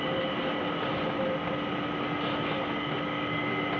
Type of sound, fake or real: real